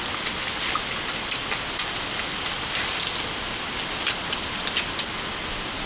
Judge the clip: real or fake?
real